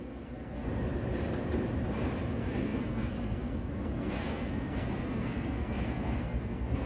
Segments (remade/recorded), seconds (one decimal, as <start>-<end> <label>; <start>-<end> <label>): 0.0-0.7 remade; 0.7-2.3 recorded; 2.3-6.9 remade

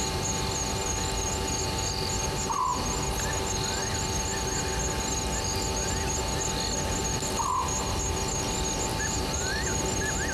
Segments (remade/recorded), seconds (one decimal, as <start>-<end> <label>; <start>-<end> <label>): 0.0-8.9 recorded; 8.9-9.7 remade; 9.7-10.3 recorded

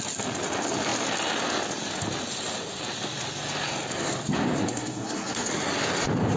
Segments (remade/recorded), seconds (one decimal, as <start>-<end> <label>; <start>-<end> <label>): 0.0-4.6 recorded; 4.6-5.5 remade; 5.5-6.4 recorded

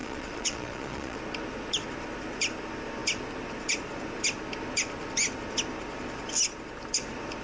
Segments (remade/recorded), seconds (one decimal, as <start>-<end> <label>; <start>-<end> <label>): 0.0-1.2 remade; 1.2-7.4 recorded